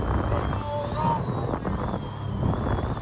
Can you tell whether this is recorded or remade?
recorded